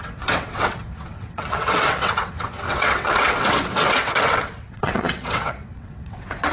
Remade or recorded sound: remade